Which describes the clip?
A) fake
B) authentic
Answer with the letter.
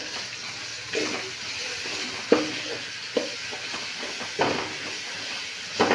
B